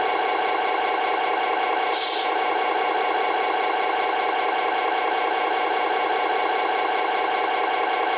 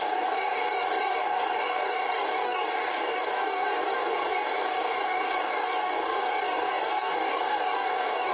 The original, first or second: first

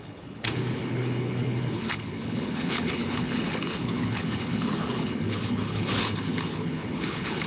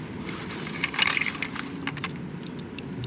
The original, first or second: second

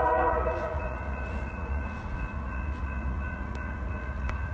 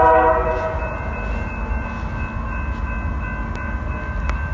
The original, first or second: second